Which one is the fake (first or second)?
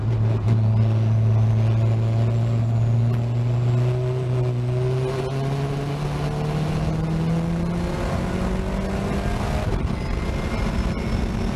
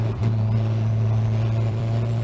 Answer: second